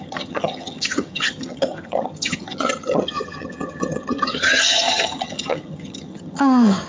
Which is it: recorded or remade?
remade